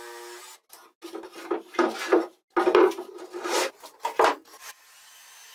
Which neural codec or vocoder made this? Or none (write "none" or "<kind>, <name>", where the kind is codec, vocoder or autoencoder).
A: none